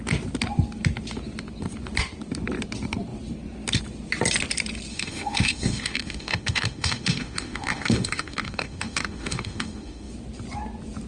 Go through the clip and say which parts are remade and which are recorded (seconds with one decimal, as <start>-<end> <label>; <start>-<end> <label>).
0.0-4.9 recorded; 4.9-10.1 remade; 10.1-11.1 recorded